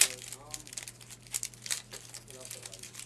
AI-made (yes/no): no